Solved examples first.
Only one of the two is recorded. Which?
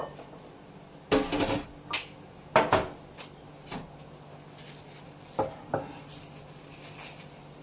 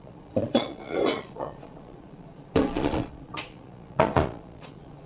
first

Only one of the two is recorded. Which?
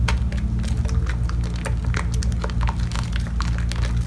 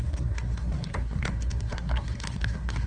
first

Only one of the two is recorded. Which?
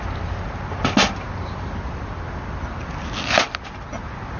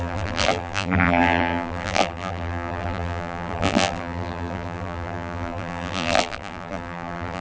first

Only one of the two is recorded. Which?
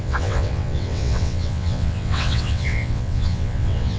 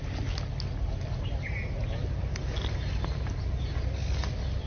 second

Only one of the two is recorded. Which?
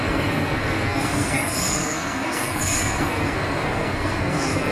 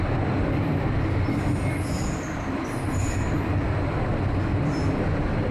second